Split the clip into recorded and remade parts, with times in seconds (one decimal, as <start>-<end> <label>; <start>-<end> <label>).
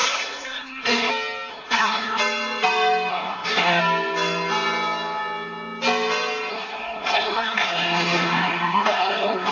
0.0-1.1 remade; 1.1-1.5 recorded; 1.5-2.2 remade; 2.2-3.1 recorded; 3.1-3.8 remade; 3.8-6.5 recorded; 6.5-9.5 remade